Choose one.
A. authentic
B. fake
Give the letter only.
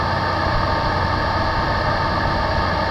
A